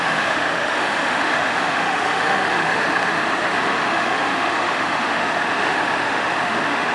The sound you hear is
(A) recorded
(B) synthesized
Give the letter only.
B